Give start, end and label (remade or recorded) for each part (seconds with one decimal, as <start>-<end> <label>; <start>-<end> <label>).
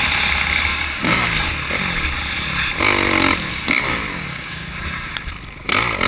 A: 0.0-0.7 recorded; 0.7-1.5 remade; 1.5-3.5 recorded; 3.5-5.1 remade; 5.1-6.1 recorded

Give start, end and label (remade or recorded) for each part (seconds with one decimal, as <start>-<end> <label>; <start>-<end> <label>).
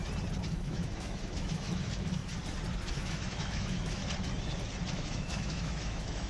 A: 0.0-0.5 recorded; 0.5-2.2 remade; 2.2-2.9 recorded; 2.9-4.0 remade; 4.0-4.9 recorded; 4.9-6.3 remade